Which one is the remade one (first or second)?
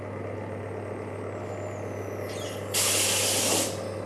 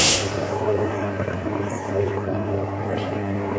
second